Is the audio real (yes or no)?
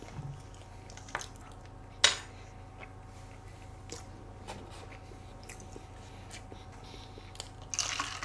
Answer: yes